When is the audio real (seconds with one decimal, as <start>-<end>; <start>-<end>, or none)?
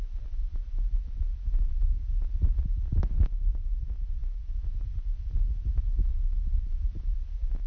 0.0-7.7